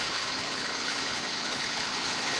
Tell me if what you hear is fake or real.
fake